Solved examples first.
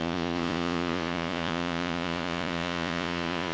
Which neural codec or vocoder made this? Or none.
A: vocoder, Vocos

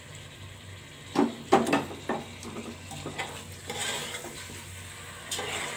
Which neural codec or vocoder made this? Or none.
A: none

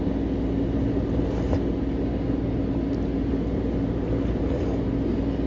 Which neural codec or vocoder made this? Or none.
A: none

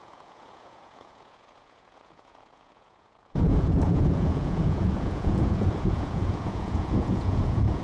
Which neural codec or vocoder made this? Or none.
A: vocoder, Vocos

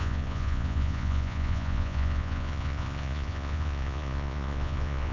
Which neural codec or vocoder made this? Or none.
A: vocoder, Vocos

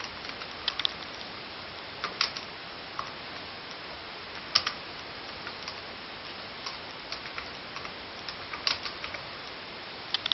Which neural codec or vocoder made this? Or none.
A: none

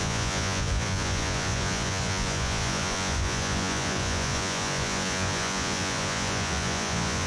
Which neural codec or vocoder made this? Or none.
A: vocoder, Vocos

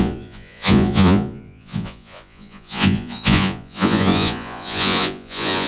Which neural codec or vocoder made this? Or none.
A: vocoder, Vocos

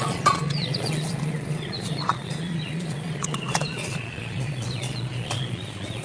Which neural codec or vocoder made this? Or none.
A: vocoder, Vocos